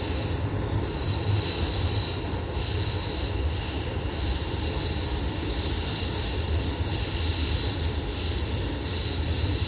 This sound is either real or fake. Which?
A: real